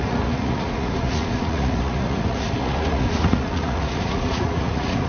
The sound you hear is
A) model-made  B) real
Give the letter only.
A